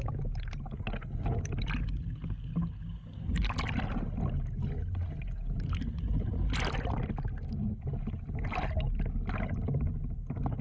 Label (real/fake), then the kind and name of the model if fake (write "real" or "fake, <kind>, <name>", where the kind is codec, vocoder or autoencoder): real